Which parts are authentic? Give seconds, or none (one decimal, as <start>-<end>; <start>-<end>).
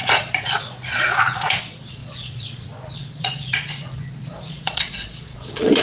none